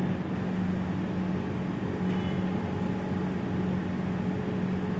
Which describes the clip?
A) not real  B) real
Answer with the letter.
B